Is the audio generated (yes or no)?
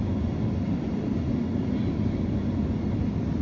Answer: no